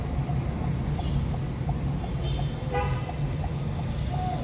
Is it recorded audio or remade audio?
recorded